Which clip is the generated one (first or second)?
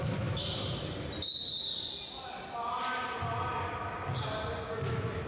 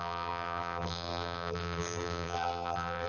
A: second